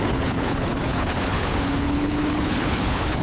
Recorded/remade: remade